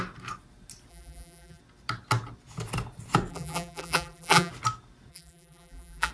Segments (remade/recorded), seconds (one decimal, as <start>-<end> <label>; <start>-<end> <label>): 0.0-0.9 recorded; 0.9-1.6 remade; 1.6-3.3 recorded; 3.3-4.5 remade; 4.5-5.1 recorded; 5.1-6.1 remade